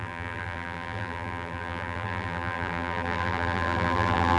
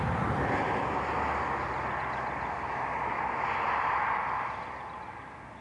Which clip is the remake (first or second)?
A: first